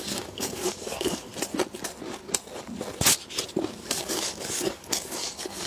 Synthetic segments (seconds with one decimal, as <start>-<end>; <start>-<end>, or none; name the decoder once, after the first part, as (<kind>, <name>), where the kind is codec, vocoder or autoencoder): 0.0-1.3 (codec, DAC); 3.7-5.7